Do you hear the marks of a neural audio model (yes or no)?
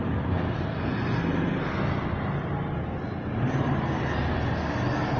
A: no